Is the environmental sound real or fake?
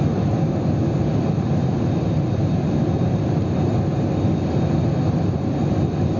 real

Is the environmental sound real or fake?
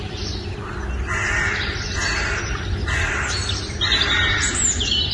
real